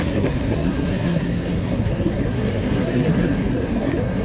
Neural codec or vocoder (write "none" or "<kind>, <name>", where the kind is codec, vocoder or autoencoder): codec, SNAC